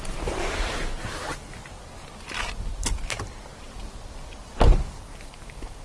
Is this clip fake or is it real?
real